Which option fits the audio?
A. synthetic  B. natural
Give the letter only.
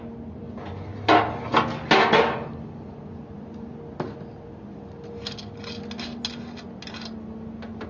B